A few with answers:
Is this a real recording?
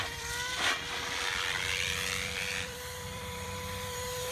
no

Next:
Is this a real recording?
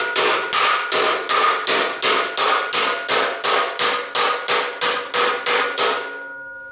yes